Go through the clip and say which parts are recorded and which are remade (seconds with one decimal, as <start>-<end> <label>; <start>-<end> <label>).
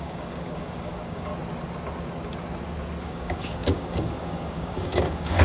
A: 0.0-1.3 remade; 1.3-3.0 recorded; 3.0-5.4 remade